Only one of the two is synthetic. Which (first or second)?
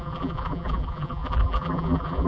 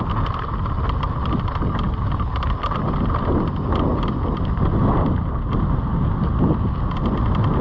first